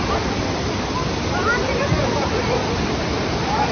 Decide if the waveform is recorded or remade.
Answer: recorded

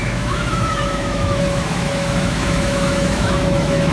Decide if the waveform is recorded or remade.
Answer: remade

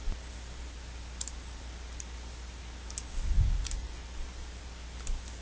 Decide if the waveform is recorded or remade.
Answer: recorded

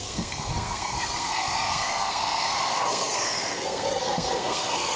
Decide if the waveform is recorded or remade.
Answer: remade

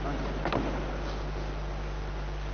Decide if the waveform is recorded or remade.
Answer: recorded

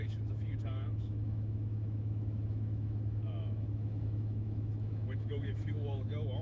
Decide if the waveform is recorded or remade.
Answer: remade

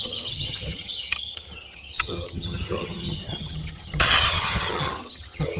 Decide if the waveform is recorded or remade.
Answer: remade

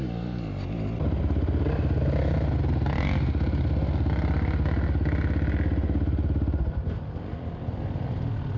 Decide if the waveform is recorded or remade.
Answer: recorded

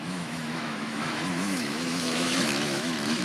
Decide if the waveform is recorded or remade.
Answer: remade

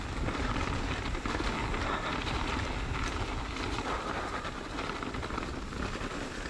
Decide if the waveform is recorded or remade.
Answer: recorded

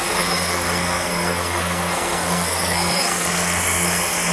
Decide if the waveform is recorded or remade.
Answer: remade